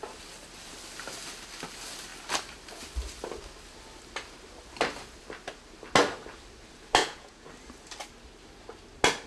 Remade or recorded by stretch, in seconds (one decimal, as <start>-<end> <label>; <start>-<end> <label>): 0.0-7.0 recorded; 7.0-7.5 remade; 7.5-9.3 recorded